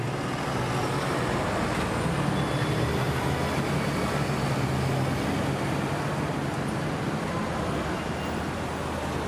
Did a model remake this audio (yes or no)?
no